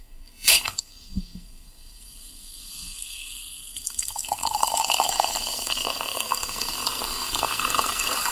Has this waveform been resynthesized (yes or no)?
yes